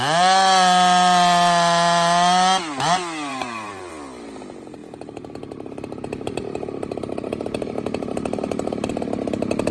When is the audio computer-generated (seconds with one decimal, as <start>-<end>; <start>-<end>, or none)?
3.3-3.9; 4.8-8.9